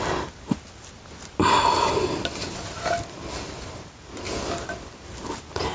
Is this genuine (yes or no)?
yes